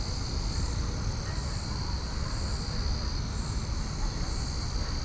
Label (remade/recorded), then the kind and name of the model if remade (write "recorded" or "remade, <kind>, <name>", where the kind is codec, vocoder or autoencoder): recorded